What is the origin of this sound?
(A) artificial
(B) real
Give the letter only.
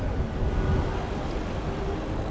B